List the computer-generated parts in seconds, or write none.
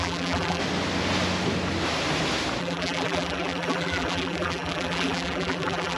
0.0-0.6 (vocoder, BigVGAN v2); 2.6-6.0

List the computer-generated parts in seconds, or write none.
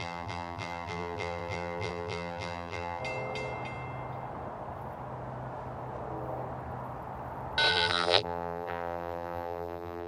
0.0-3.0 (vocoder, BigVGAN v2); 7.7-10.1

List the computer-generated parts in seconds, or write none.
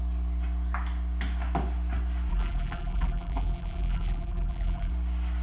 2.3-4.9 (vocoder, BigVGAN v2)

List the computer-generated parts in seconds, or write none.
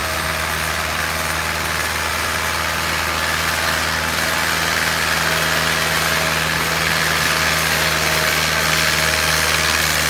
none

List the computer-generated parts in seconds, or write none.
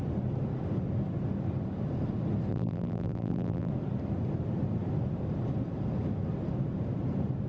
2.5-3.7 (vocoder, BigVGAN v2)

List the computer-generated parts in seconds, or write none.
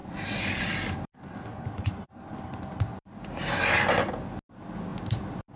0.0-3.4 (vocoder, BigVGAN v2); 4.9-5.6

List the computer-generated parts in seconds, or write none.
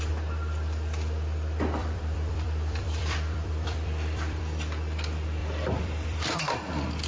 1.8-4.4 (vocoder, BigVGAN v2); 5.4-6.3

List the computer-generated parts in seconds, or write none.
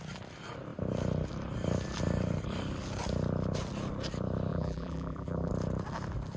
4.5-5.5 (vocoder, BigVGAN v2)